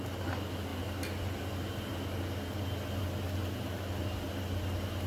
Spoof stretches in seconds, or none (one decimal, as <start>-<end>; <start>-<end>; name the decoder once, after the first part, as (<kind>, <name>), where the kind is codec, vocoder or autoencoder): none